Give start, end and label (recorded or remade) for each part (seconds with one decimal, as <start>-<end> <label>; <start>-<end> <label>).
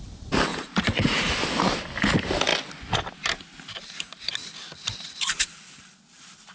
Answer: 0.0-0.5 recorded; 0.5-1.3 remade; 1.3-6.5 recorded